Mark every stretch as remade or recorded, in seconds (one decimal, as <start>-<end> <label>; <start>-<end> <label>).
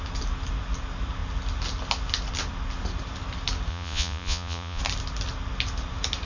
0.0-3.7 recorded; 3.7-4.8 remade; 4.8-6.3 recorded